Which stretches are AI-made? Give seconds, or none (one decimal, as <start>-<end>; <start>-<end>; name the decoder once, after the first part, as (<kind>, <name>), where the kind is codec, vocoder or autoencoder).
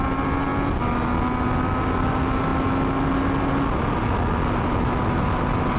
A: none